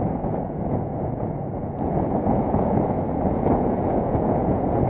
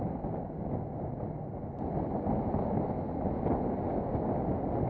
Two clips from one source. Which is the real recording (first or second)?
second